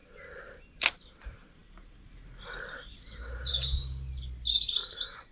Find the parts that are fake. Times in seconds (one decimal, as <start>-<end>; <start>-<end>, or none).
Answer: none